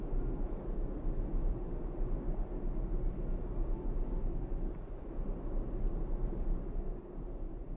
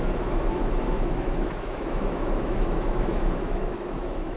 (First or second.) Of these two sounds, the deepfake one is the second